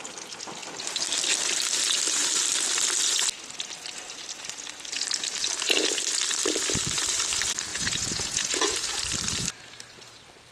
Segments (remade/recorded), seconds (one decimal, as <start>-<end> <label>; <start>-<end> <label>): 0.0-7.7 recorded; 7.7-9.0 remade; 9.0-10.5 recorded